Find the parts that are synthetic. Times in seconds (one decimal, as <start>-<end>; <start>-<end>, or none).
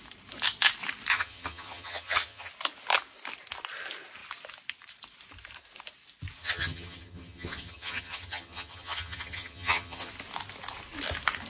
1.1-2.5; 6.4-10.1